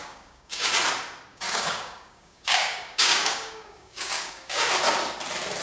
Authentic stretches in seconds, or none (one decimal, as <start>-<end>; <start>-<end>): 0.7-1.3; 4.7-5.6